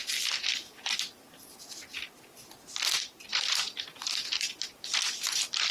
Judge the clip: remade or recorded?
recorded